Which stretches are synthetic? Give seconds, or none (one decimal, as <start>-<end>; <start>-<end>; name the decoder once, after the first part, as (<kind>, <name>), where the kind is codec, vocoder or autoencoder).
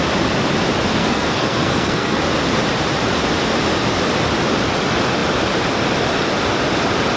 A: 0.9-2.2 (codec, SNAC)